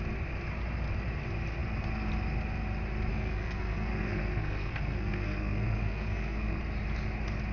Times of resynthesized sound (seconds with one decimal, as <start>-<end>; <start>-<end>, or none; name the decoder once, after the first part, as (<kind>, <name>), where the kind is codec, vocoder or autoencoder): 3.1-6.6 (codec, SNAC)

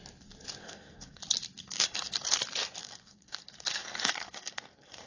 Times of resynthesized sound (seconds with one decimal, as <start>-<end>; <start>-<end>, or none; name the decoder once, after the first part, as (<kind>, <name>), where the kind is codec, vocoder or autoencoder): 0.6-1.2 (codec, SNAC); 1.6-2.4; 2.8-5.1

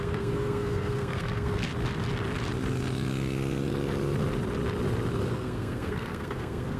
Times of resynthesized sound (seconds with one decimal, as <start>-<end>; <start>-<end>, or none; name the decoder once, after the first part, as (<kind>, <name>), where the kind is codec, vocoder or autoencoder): 0.0-1.7 (codec, SNAC); 5.3-6.8

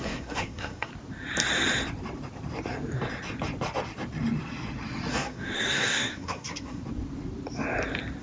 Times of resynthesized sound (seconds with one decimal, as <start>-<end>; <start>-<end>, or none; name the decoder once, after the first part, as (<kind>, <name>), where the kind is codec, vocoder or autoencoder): 0.0-0.9 (codec, SNAC); 5.1-6.8

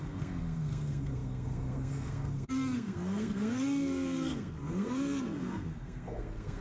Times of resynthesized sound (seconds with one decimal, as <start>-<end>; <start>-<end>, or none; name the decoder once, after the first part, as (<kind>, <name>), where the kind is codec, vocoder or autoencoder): 0.0-6.6 (codec, SNAC)

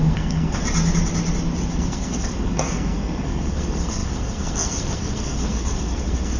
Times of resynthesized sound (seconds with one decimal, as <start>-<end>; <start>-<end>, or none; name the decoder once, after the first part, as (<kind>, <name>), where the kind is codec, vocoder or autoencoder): 0.0-0.6 (codec, SNAC); 1.7-6.4